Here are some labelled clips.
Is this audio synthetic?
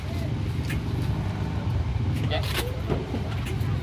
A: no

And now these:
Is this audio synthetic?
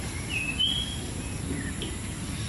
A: no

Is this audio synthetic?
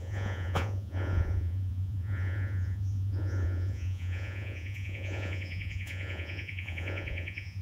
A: yes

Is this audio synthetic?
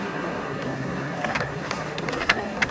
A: yes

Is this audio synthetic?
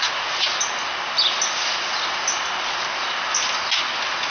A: no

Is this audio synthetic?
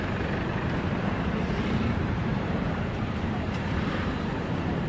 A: yes